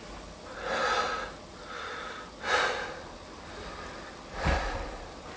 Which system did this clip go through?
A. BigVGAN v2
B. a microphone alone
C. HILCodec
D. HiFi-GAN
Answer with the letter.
B